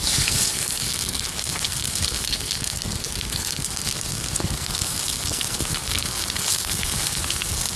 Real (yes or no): no